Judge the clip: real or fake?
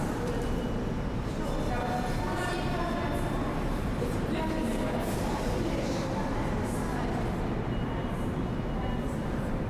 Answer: real